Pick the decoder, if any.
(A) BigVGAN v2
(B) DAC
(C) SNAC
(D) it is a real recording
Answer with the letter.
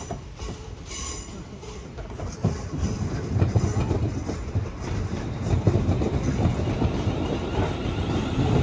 A